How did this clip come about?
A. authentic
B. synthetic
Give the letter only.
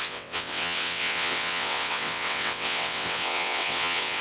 B